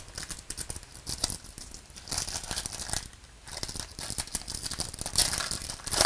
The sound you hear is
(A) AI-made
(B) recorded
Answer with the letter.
B